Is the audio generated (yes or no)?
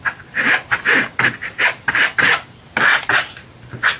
no